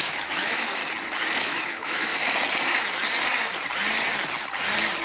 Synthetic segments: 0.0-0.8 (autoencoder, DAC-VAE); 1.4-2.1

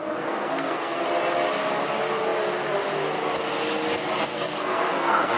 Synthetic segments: 0.0-1.0 (codec, SNAC); 4.2-5.4